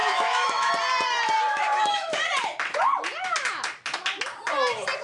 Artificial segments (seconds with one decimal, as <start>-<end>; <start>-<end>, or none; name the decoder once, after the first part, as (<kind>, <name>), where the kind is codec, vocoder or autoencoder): 0.0-0.7 (autoencoder, DAC-VAE); 1.5-2.2